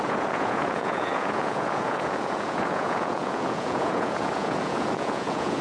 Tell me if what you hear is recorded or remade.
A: remade